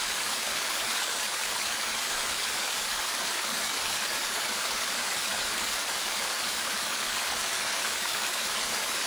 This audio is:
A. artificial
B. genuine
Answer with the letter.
A